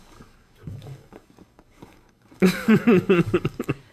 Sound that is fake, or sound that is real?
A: fake